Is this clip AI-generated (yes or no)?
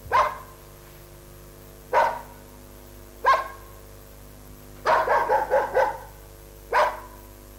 no